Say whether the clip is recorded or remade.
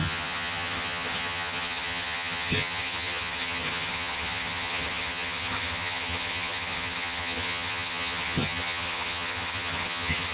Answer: remade